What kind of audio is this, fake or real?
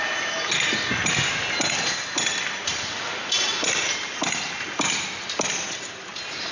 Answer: real